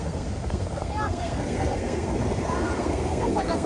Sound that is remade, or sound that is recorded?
remade